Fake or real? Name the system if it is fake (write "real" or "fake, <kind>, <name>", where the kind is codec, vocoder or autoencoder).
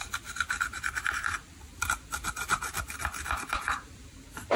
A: fake, vocoder, BigVGAN v2